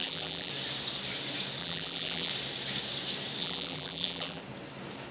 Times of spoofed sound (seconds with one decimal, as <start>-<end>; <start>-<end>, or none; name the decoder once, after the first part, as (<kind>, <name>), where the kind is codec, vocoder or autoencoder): 0.0-0.5 (vocoder, BigVGAN v2); 1.6-2.3; 3.4-4.4